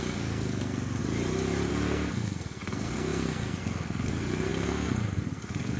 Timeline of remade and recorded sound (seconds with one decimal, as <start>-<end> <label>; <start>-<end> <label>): 0.0-1.0 remade; 1.0-1.7 recorded; 1.7-5.8 remade